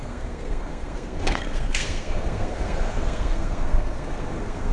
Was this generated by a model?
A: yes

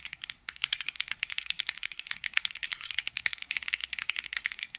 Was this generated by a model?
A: yes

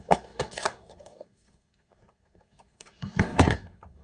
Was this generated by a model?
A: yes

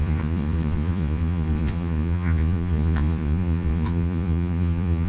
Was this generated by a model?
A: yes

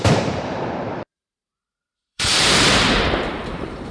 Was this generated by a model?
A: yes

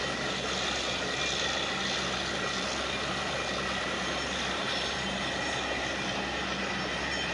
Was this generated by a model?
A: no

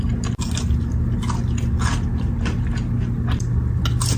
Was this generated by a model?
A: no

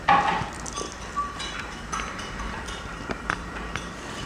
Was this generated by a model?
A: yes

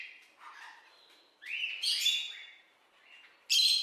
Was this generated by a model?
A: no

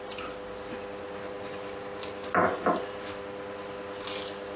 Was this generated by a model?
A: no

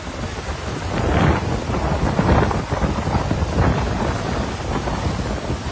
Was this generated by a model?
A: no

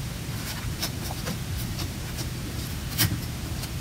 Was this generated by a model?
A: yes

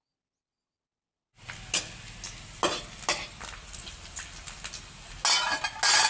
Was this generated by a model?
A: no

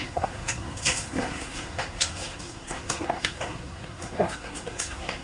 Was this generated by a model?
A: yes